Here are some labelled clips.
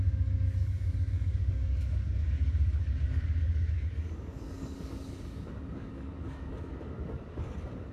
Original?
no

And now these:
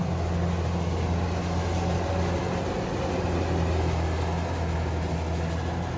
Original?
yes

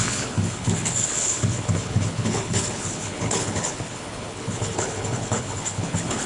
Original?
no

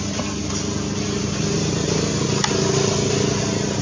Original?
yes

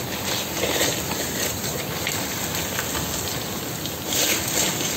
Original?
yes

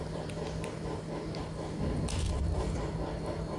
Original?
yes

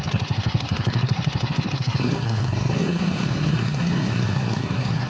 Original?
no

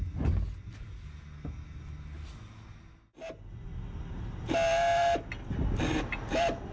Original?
yes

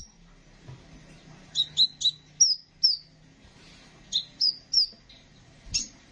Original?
yes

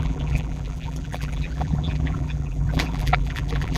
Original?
no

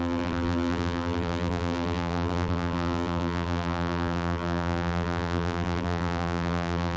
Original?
no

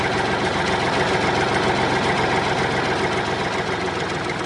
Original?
yes